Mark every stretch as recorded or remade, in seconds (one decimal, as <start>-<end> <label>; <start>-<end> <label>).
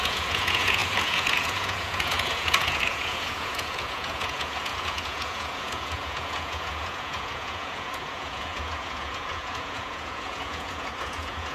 0.0-11.5 remade